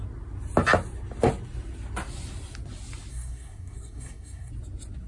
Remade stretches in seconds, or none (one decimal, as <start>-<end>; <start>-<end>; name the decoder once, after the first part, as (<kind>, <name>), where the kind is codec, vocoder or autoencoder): 3.1-4.5 (codec, SNAC)